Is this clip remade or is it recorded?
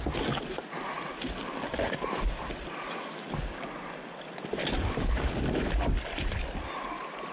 recorded